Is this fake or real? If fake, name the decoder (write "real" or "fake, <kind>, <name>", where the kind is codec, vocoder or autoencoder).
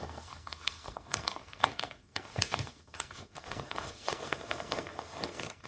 fake, codec, SNAC